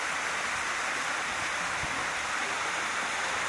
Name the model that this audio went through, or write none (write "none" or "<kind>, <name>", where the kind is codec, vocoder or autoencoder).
none